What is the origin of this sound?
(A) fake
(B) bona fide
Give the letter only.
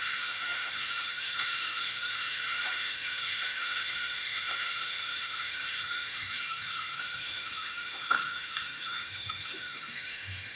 A